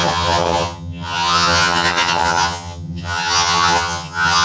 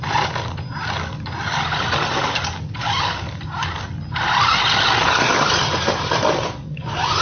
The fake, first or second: first